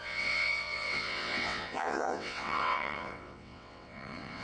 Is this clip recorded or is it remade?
remade